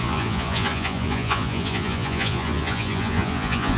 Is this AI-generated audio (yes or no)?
yes